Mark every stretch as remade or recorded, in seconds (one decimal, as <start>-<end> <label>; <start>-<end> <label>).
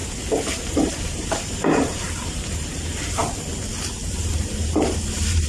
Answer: 0.0-0.7 recorded; 0.7-3.2 remade; 3.2-4.1 recorded; 4.1-5.5 remade